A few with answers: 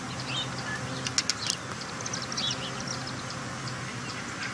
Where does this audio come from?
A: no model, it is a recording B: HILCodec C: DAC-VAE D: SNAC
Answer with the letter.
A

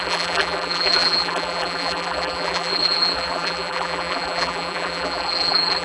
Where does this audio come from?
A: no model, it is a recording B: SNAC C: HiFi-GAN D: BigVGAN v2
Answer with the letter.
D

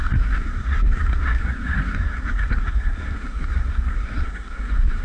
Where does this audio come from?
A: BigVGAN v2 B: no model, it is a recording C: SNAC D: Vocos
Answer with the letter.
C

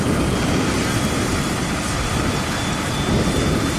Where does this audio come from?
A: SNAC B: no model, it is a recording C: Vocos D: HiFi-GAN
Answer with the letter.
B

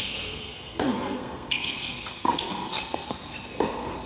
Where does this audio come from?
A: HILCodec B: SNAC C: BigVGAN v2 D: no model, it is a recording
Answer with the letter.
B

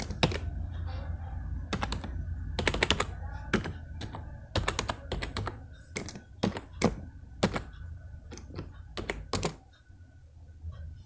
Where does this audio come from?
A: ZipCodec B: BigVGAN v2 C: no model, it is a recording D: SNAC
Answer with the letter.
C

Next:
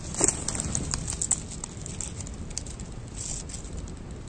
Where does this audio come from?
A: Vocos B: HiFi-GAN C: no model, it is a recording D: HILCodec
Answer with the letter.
C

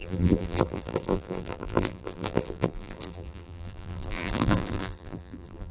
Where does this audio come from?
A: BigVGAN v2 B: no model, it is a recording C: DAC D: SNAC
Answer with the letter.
A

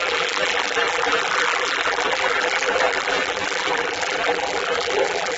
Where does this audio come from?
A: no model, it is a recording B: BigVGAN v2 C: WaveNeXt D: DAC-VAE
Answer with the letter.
B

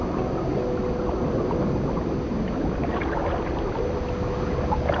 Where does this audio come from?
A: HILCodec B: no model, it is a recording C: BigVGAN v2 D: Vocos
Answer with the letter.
B